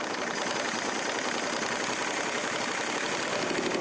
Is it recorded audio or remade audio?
recorded